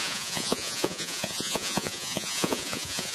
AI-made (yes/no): yes